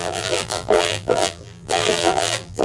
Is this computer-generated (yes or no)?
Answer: yes